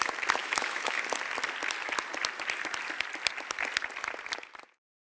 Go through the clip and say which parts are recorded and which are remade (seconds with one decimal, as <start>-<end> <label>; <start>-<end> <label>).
0.0-0.4 recorded; 0.4-1.0 remade; 1.0-5.1 recorded